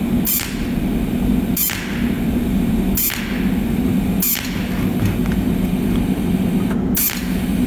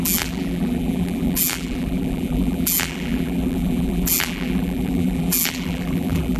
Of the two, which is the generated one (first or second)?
second